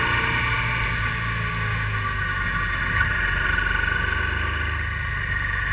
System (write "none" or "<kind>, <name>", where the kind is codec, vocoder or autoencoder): none